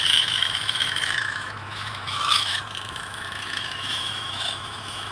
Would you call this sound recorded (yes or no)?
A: no